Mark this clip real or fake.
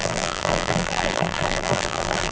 fake